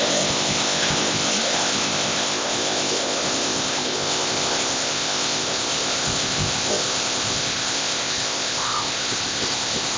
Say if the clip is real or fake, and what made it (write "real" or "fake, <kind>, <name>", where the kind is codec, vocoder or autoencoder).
fake, codec, ZipCodec